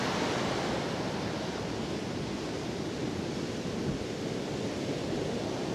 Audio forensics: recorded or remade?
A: recorded